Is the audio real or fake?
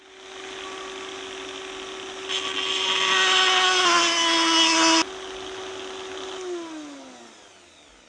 real